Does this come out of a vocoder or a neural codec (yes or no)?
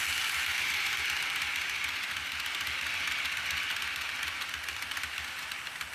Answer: no